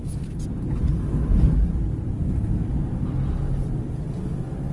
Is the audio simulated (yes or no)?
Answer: no